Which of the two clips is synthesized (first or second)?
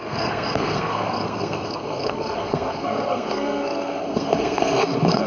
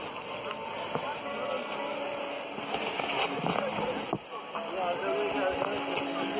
first